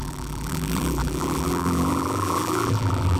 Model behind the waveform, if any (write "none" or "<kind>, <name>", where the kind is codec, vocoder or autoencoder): vocoder, BigVGAN v2